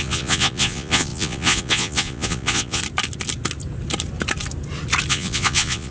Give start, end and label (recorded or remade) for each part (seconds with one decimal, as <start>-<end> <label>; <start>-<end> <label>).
0.0-2.8 remade; 2.8-5.1 recorded; 5.1-5.9 remade